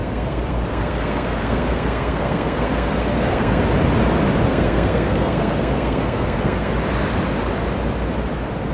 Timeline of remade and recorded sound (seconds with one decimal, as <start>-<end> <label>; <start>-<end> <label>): 0.0-3.6 remade; 3.6-4.5 recorded; 4.5-6.7 remade; 6.7-8.7 recorded